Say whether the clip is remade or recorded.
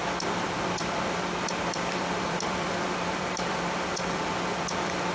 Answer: remade